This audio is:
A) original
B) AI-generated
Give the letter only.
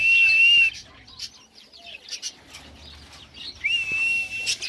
A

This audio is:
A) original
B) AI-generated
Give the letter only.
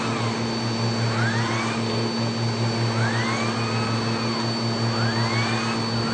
A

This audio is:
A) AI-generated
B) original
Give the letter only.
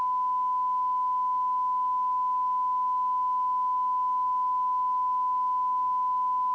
B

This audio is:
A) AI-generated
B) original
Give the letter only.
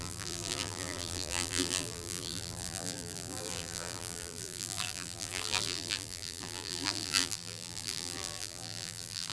A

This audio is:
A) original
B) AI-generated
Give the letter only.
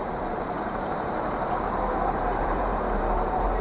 B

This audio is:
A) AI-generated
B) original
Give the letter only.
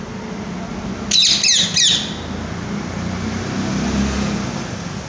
B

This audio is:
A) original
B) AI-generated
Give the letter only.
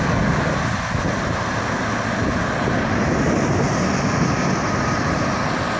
A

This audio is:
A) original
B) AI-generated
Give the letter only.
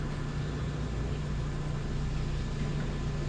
A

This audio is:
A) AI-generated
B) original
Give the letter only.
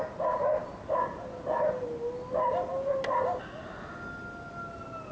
B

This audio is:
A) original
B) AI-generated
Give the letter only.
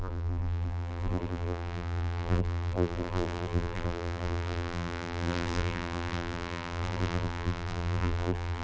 B